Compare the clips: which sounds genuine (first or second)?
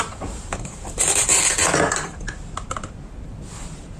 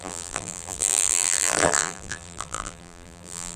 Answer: first